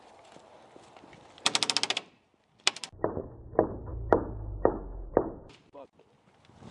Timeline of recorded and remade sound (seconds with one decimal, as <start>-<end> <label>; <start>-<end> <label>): 0.0-3.9 recorded; 3.9-5.1 remade; 5.1-6.7 recorded